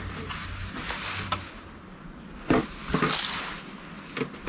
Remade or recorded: recorded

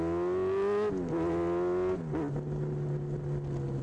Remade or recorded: recorded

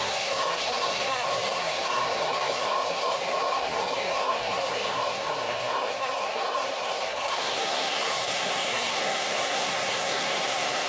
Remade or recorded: remade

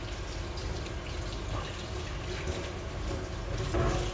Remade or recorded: recorded